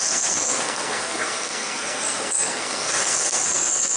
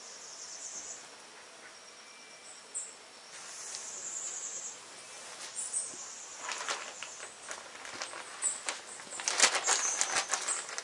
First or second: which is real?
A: second